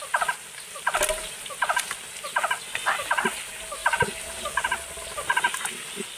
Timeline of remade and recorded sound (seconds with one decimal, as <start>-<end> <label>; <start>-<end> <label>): 0.0-6.2 recorded